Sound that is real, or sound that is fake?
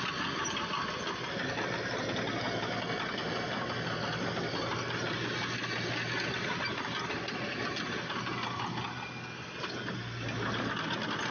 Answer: real